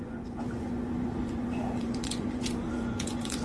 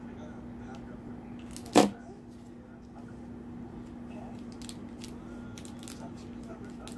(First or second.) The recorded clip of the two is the second